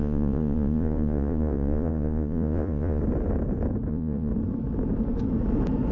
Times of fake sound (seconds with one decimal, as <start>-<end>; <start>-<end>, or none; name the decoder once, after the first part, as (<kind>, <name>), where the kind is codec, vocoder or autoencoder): 0.0-3.0 (vocoder, Vocos); 3.9-4.3